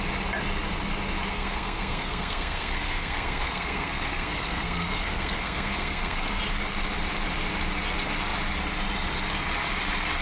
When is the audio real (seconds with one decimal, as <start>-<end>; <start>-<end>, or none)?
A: 0.0-1.3; 6.4-10.2